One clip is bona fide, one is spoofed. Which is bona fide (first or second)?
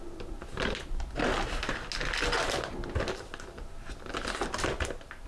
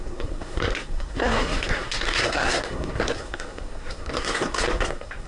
first